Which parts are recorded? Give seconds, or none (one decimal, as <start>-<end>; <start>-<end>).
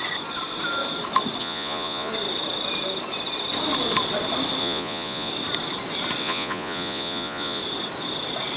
0.0-1.4; 2.1-4.6; 5.3-6.2; 7.6-8.6